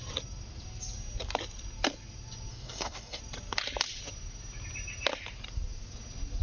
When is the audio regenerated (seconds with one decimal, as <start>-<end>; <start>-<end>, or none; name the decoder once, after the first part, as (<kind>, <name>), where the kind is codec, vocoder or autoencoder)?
2.5-3.2 (codec, DAC)

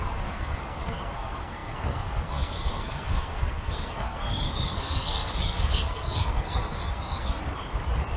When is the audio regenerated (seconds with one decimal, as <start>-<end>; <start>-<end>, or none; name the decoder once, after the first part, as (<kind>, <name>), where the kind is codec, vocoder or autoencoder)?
0.0-7.4 (codec, SNAC)

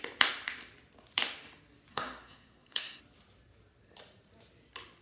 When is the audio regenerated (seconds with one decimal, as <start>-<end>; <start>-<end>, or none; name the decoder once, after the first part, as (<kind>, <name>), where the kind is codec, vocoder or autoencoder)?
1.9-3.0 (codec, SNAC)

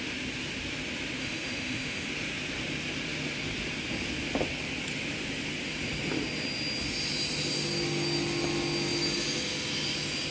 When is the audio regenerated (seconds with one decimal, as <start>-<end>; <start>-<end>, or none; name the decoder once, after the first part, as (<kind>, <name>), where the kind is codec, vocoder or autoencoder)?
1.2-2.1 (autoencoder, DAC-VAE)

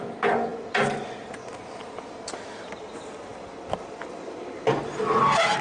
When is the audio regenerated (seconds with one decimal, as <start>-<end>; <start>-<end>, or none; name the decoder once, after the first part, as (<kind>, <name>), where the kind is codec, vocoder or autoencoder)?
3.3-4.3 (vocoder, BigVGAN v2)

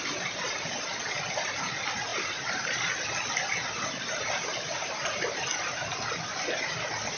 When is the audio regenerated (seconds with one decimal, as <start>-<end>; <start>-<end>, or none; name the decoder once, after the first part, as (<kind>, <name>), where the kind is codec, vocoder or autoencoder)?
2.1-2.9 (vocoder, BigVGAN v2); 4.5-5.4

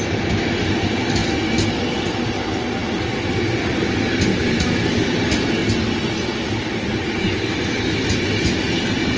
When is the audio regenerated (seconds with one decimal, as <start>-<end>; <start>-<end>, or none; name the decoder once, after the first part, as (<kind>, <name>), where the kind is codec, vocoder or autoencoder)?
4.3-5.1 (autoencoder, DAC-VAE)